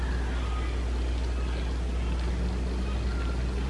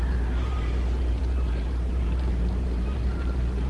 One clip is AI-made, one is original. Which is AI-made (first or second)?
second